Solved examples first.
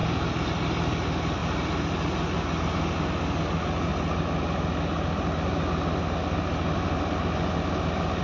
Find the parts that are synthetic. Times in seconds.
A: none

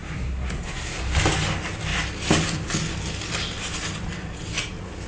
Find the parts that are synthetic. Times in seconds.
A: 0.0-1.0 (codec, SNAC)

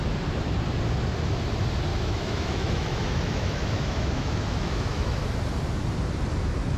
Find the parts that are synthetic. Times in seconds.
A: 1.9-5.2 (autoencoder, DAC-VAE)

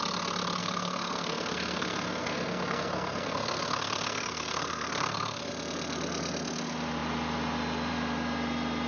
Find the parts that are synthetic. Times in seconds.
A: 0.6-5.5 (codec, SNAC)

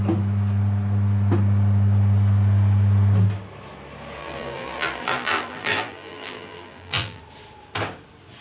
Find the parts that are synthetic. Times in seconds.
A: 4.2-7.2 (vocoder, BigVGAN v2)

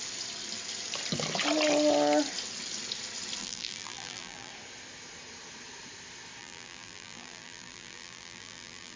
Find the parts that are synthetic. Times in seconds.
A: 3.4-4.5 (vocoder, BigVGAN v2); 6.4-9.0

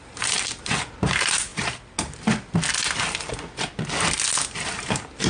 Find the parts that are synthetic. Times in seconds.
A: 0.0-1.5 (vocoder, BigVGAN v2); 4.7-5.3

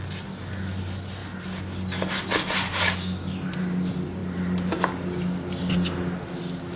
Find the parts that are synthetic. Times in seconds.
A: none